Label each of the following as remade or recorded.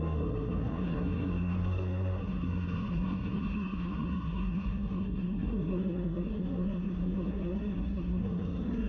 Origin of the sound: remade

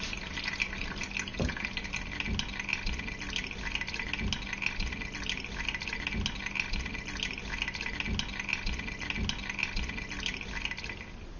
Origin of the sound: recorded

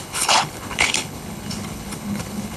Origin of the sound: remade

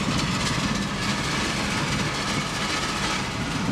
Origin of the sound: recorded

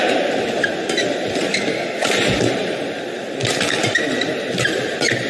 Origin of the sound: recorded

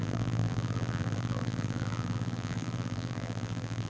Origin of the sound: remade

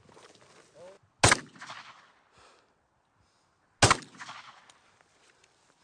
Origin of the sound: recorded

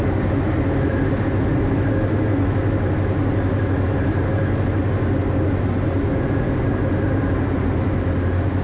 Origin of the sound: recorded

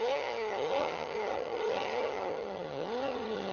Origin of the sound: remade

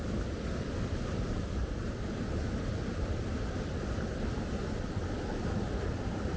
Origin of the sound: recorded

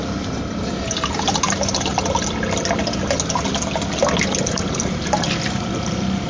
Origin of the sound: recorded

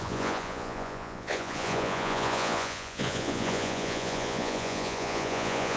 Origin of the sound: remade